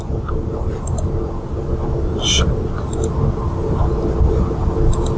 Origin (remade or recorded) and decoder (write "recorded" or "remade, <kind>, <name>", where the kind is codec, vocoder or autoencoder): recorded